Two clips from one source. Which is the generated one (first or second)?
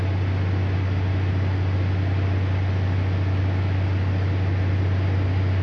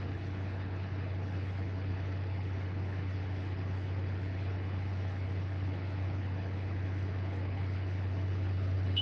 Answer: second